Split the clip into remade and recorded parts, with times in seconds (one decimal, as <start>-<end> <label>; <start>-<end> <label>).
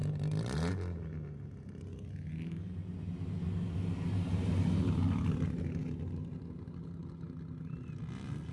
0.0-8.5 recorded